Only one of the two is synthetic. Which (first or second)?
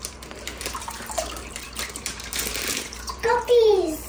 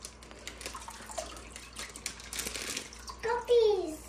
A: first